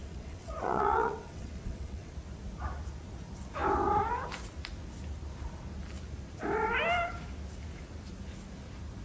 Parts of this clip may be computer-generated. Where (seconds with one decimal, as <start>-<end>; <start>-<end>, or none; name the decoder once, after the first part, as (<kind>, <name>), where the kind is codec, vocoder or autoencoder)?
0.0-2.1 (vocoder, WaveNeXt)